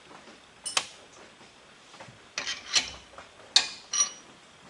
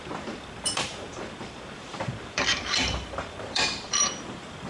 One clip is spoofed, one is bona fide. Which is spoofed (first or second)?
second